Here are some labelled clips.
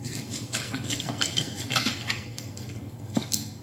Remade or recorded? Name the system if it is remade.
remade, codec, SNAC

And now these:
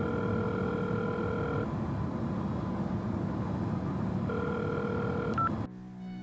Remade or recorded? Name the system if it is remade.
recorded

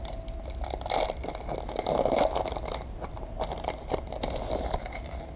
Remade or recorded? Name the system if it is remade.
recorded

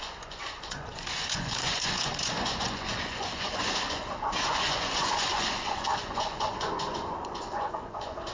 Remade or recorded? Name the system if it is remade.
remade, vocoder, Vocos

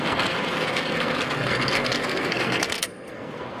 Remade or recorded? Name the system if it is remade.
remade, codec, SNAC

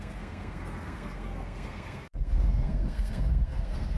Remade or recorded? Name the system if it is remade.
remade, codec, SNAC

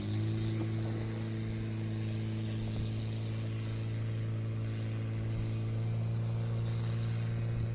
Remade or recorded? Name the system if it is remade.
recorded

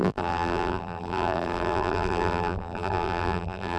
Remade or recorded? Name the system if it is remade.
remade, vocoder, BigVGAN v2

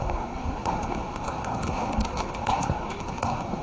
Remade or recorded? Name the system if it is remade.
remade, codec, SNAC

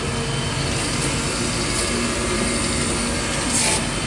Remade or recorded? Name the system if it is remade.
recorded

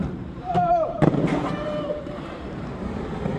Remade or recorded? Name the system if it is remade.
remade, vocoder, BigVGAN v2